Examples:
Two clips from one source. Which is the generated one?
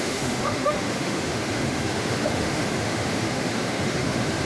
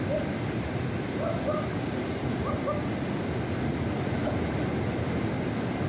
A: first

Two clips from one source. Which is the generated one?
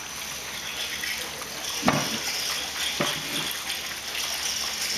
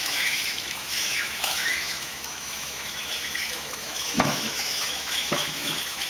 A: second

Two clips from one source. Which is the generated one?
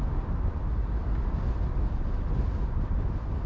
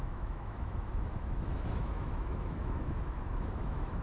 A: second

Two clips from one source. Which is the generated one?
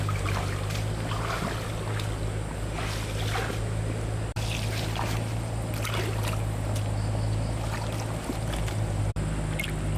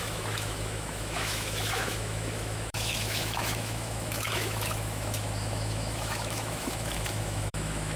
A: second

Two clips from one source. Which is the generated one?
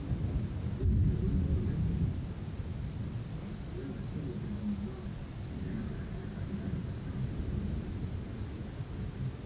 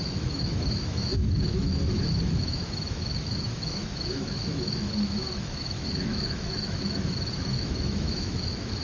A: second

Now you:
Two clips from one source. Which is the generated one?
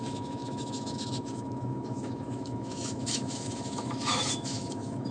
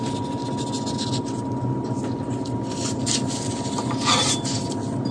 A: first